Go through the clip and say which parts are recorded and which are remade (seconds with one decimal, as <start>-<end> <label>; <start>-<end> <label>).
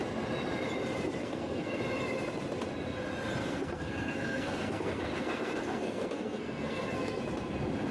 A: 0.0-1.2 recorded; 1.2-1.8 remade; 1.8-3.4 recorded; 3.4-7.2 remade; 7.2-7.9 recorded